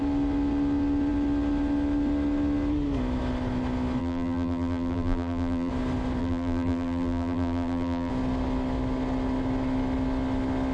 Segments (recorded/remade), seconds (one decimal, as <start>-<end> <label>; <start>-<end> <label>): 0.0-4.0 recorded; 4.0-5.7 remade; 5.7-6.2 recorded; 6.2-8.1 remade; 8.1-10.7 recorded